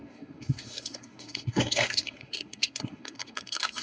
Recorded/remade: remade